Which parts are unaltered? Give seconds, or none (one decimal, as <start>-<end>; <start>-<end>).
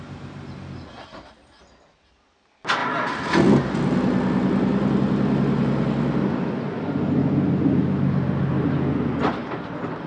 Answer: 0.0-10.1